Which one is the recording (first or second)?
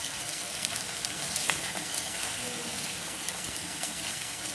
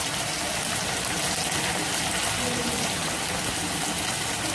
second